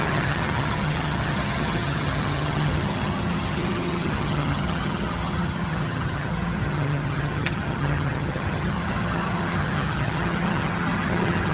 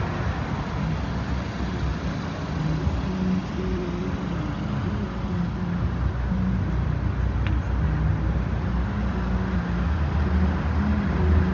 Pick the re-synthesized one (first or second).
first